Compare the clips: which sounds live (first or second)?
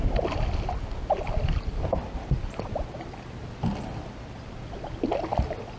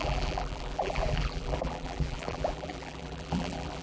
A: first